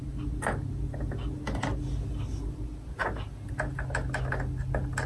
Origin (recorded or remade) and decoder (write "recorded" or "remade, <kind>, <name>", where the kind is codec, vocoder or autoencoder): recorded